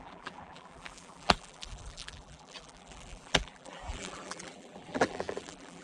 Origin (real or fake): fake